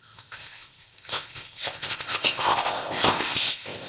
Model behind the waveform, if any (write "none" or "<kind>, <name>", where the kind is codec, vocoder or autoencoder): codec, ZipCodec